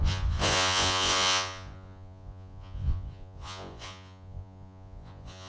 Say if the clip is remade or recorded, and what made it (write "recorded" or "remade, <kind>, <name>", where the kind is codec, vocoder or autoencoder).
remade, vocoder, Vocos